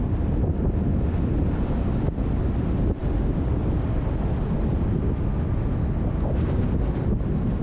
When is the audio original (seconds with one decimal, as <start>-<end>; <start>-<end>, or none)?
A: 0.0-7.6